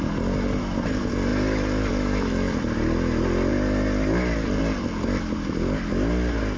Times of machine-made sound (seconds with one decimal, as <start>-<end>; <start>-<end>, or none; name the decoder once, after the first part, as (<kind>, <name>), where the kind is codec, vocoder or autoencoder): none

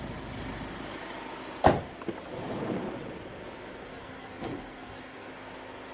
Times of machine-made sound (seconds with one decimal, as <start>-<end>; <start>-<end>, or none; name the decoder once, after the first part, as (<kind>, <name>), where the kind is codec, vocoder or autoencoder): 3.9-5.3 (codec, SNAC)

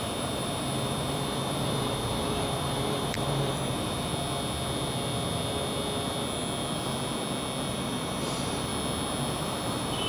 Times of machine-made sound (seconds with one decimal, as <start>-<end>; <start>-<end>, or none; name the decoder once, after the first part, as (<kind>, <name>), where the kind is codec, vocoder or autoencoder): 0.0-4.1 (vocoder, BigVGAN v2); 7.7-8.7; 9.3-10.1

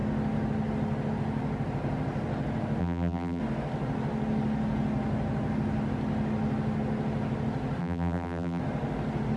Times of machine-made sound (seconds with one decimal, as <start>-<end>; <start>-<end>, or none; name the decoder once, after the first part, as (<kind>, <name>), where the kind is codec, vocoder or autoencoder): 2.8-3.4 (vocoder, BigVGAN v2); 7.8-8.6

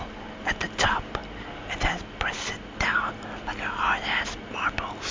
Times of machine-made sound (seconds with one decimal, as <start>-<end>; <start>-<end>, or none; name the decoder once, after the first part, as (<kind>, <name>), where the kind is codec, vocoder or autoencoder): none

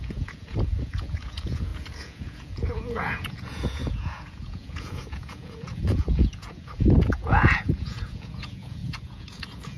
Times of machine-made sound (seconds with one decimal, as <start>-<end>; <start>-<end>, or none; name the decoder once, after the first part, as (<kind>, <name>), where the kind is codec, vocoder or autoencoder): 0.0-9.8 (vocoder, Vocos)

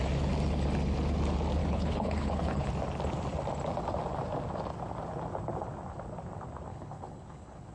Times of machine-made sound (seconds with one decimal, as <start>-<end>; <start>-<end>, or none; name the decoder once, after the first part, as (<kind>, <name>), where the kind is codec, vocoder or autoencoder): 1.6-2.7 (codec, HILCodec); 6.7-7.7